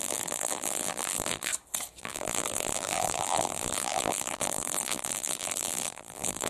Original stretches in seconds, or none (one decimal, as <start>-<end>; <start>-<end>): 1.5-2.0